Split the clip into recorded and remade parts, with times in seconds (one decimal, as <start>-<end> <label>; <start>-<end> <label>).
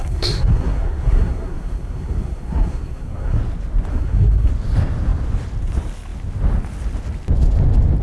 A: 0.0-3.4 remade; 3.4-3.9 recorded; 3.9-4.5 remade; 4.5-8.0 recorded